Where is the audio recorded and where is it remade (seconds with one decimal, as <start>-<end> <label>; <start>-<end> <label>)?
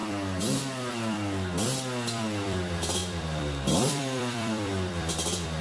0.0-5.6 remade